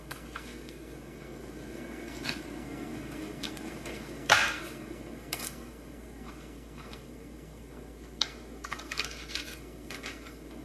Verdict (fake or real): fake